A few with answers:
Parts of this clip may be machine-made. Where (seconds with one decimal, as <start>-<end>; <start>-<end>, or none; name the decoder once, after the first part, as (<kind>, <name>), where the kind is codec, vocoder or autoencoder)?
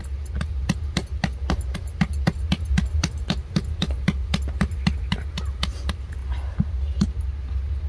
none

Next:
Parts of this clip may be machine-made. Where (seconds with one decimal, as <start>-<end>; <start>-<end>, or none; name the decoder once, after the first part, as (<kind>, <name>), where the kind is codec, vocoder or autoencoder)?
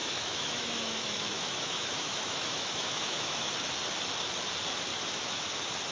0.0-3.5 (autoencoder, DAC-VAE); 4.9-5.5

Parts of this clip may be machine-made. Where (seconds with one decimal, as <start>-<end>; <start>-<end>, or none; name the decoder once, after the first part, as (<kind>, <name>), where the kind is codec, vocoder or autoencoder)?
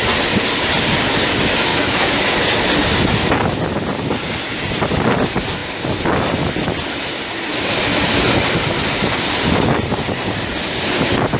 1.7-2.2 (autoencoder, DAC-VAE)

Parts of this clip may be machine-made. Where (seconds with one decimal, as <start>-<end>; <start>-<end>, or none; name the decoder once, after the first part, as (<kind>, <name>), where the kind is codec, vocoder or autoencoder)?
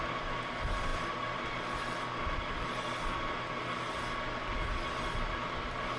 none